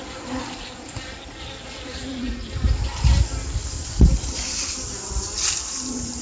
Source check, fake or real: real